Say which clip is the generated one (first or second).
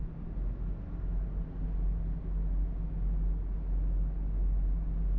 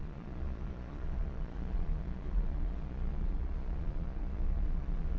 second